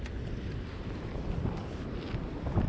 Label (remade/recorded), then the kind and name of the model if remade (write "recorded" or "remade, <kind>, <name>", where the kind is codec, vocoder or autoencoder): recorded